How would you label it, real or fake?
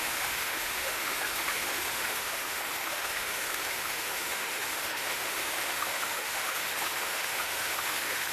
fake